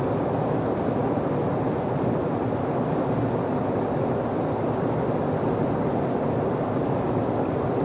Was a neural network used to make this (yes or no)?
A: no